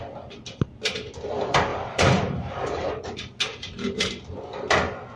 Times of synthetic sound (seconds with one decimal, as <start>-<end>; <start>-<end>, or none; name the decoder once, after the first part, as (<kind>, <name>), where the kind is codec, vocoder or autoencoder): 1.7-2.9 (vocoder, BigVGAN v2); 3.5-4.1